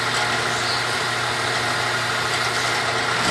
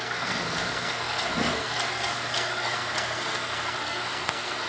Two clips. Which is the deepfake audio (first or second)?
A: second